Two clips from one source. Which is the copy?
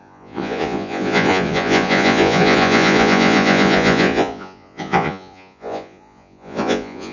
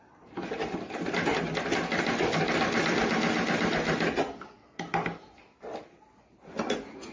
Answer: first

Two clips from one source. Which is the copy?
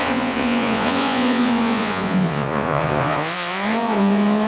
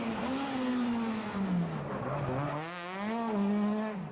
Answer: first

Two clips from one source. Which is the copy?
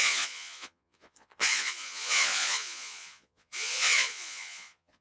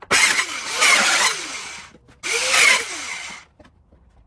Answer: first